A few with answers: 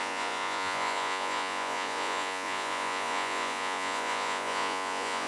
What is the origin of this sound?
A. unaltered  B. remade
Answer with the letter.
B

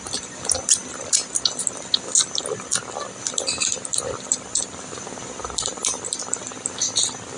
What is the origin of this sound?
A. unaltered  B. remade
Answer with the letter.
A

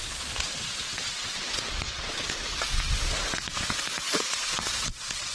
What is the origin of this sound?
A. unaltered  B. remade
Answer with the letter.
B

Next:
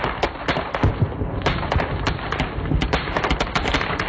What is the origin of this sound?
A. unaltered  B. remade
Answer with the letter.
A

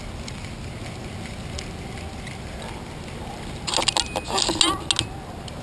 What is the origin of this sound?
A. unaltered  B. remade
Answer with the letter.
A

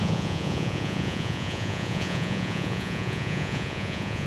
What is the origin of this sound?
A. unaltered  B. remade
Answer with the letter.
B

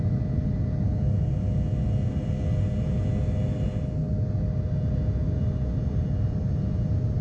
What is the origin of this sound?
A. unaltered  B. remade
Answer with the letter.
A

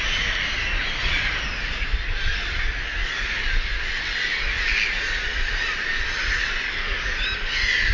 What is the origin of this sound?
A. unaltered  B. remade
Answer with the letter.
A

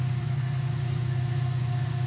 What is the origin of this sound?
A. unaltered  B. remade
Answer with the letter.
B